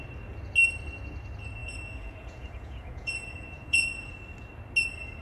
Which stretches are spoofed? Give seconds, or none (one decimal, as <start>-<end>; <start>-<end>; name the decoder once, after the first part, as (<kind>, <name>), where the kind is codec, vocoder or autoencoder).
1.6-4.1 (vocoder, Vocos)